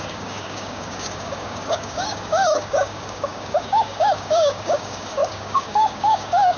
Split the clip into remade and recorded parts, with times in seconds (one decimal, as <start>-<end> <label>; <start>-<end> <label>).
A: 0.0-6.6 remade